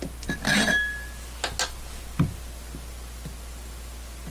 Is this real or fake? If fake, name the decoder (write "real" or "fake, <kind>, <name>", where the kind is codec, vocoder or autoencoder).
real